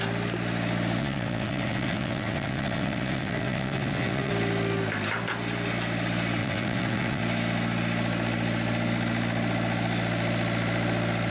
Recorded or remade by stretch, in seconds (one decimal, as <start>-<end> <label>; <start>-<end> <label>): 0.0-1.0 recorded; 1.0-4.3 remade; 4.3-6.4 recorded; 6.4-7.2 remade; 7.2-11.3 recorded